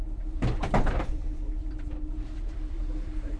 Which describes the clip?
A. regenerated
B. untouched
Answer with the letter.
A